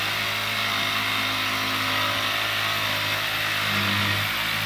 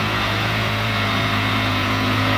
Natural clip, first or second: first